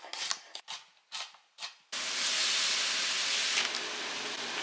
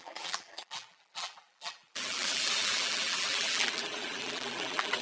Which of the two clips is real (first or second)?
first